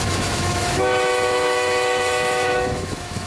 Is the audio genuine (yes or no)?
no